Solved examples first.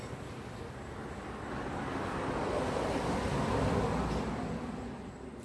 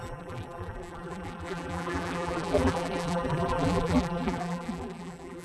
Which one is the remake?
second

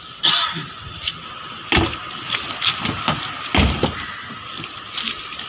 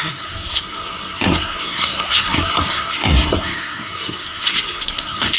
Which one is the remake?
second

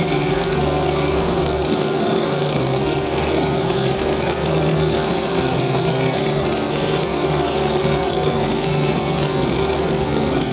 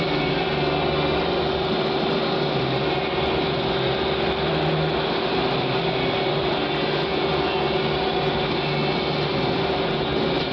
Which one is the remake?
first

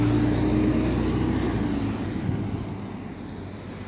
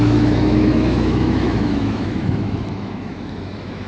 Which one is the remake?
second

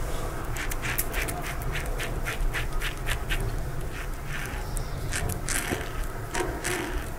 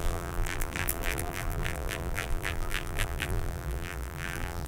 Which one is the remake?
second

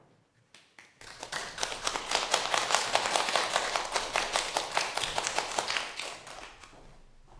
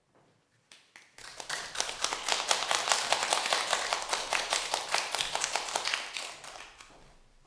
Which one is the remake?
second